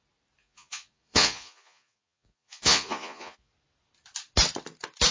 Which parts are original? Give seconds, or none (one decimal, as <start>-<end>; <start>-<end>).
0.0-0.4; 3.5-5.1